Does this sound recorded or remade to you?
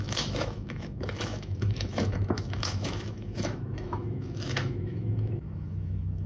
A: remade